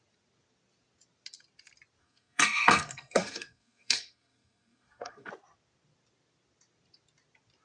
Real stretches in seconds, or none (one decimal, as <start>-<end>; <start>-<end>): 0.0-2.0; 5.3-7.6